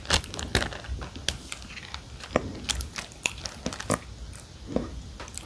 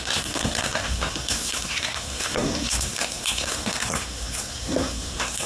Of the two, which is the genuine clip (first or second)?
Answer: first